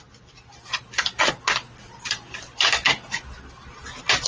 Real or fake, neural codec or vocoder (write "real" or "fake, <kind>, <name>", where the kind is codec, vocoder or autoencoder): real